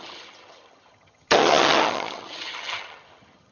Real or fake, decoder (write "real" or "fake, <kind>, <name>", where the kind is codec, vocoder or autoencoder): fake, vocoder, HiFi-GAN